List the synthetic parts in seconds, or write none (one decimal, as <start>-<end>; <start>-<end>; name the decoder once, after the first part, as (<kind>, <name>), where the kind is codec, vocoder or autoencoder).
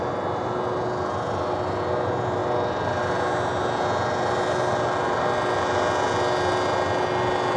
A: none